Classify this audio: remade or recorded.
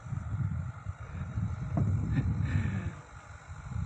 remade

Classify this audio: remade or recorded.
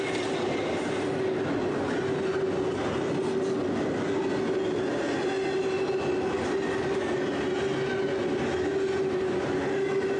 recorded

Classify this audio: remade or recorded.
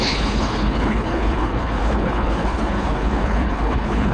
remade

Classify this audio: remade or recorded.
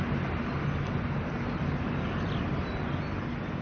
recorded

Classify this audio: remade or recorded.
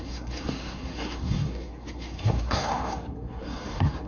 remade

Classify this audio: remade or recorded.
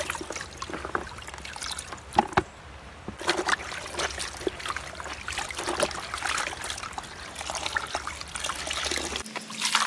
recorded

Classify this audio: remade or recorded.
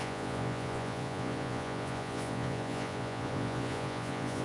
remade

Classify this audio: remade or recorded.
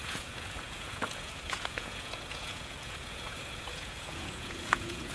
remade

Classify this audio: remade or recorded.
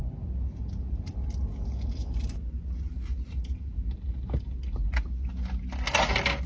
recorded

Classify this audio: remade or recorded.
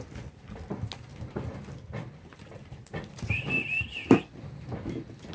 recorded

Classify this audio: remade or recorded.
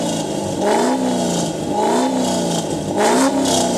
recorded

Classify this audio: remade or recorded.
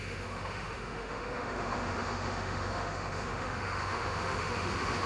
remade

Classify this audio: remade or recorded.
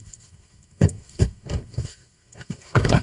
remade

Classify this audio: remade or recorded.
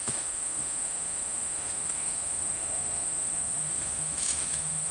remade